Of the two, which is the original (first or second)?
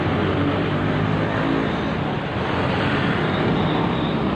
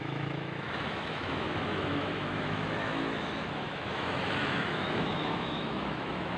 first